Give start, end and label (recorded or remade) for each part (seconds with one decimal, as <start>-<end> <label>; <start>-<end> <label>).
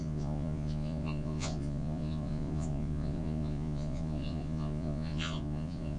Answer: 0.0-6.0 remade